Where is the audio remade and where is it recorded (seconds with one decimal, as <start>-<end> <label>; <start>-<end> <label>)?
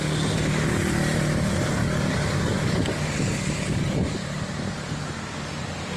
0.0-1.8 recorded; 1.8-4.3 remade; 4.3-6.0 recorded